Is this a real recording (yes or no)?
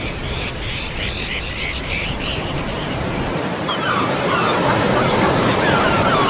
no